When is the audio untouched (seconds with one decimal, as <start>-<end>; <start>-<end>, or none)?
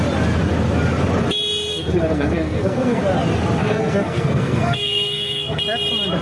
0.0-1.7; 3.0-3.6; 5.6-6.2